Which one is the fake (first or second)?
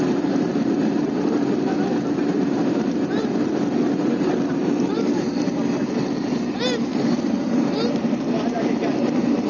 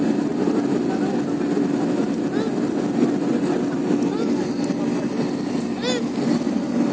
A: first